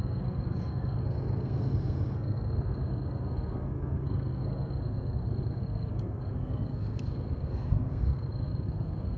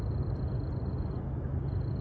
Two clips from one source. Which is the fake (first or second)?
first